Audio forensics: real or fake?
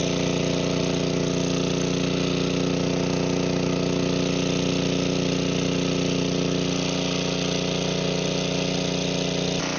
real